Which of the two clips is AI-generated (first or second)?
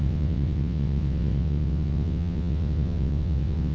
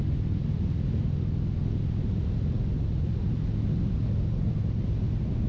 first